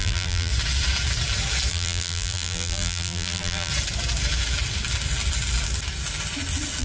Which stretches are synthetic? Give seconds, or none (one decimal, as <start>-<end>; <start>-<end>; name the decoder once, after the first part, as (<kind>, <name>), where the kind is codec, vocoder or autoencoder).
0.0-0.5 (vocoder, BigVGAN v2); 1.7-3.7